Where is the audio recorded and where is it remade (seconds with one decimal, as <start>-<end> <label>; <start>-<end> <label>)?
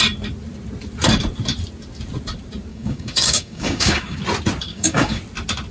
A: 0.0-2.7 recorded; 2.7-4.2 remade; 4.2-4.7 recorded; 4.7-5.2 remade; 5.2-5.7 recorded